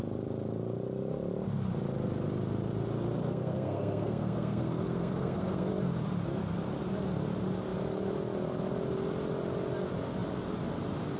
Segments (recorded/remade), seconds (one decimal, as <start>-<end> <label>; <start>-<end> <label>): 0.0-3.2 recorded; 3.2-5.7 remade; 5.7-11.2 recorded